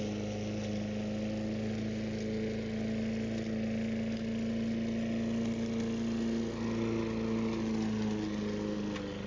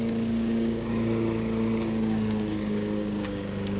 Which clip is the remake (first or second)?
second